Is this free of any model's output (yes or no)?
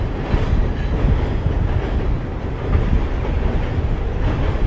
yes